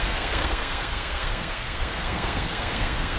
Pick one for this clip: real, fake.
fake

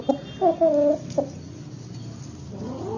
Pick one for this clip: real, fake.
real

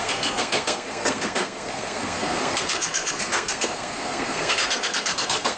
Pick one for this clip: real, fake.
fake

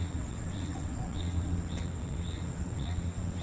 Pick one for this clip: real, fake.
fake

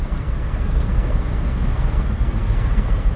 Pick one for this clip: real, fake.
fake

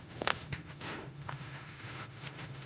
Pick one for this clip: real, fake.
fake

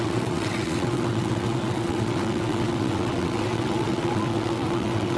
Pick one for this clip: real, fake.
fake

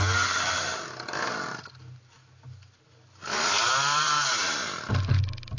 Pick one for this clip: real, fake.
real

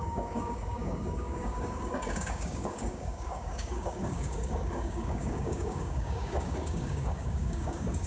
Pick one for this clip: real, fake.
fake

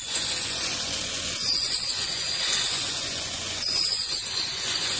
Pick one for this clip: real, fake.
fake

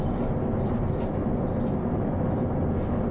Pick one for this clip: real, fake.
real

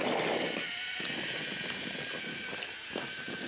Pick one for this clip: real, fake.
real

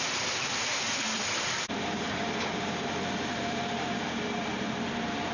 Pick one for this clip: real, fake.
fake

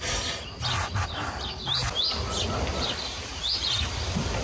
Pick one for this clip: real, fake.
real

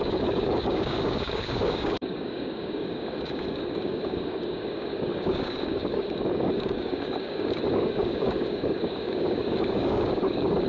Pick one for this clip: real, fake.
fake